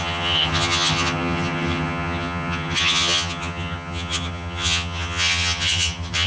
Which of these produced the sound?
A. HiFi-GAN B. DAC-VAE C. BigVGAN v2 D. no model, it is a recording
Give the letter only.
A